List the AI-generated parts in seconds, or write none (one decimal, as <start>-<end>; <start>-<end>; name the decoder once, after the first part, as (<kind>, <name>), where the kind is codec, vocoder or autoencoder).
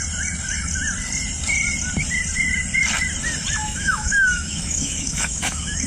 3.6-5.9 (autoencoder, DAC-VAE)